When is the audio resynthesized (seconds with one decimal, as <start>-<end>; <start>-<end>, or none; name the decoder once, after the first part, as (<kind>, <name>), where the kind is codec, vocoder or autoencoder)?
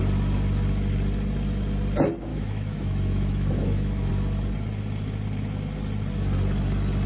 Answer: 2.3-4.1 (autoencoder, DAC-VAE)